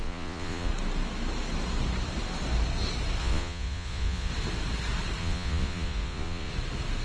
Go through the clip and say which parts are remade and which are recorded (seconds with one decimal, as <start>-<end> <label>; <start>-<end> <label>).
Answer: 0.0-0.7 remade; 0.7-3.2 recorded; 3.2-4.3 remade; 4.3-5.2 recorded; 5.2-6.5 remade; 6.5-7.0 recorded